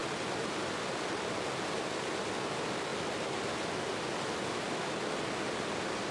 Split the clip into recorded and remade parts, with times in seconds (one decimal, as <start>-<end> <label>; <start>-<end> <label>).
0.0-6.1 recorded